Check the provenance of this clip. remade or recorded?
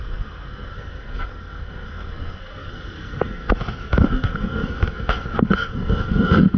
remade